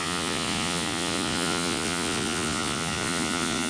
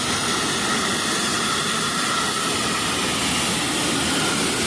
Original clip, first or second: second